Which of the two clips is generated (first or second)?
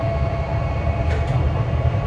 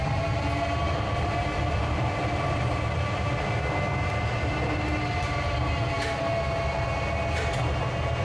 first